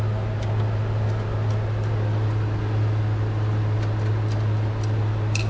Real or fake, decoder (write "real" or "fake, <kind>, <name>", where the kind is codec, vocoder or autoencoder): real